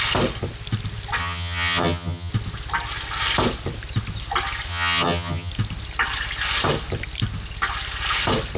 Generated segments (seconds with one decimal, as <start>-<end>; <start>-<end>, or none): 1.2-2.3; 4.7-5.5